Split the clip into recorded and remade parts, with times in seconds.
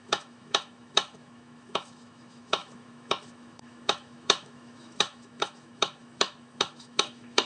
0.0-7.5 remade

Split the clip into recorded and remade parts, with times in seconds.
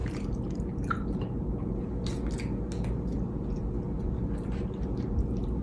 0.0-5.6 recorded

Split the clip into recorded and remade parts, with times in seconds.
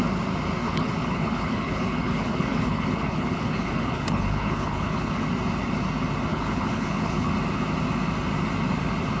0.0-0.6 recorded; 0.6-5.1 remade; 5.1-6.3 recorded; 6.3-7.3 remade; 7.3-9.2 recorded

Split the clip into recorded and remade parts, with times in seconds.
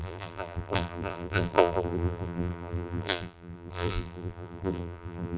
0.0-5.4 remade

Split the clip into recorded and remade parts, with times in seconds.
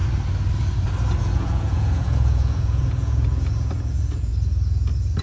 0.0-1.2 recorded; 1.2-4.3 remade; 4.3-5.2 recorded